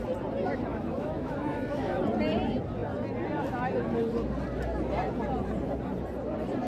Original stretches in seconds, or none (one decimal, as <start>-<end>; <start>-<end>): 0.0-0.7; 2.0-6.7